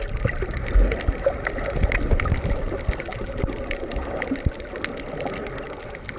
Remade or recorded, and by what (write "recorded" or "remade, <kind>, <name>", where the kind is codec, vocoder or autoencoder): recorded